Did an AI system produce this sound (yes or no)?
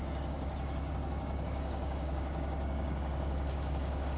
yes